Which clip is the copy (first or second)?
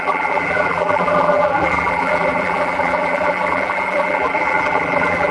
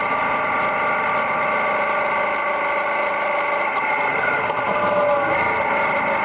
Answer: first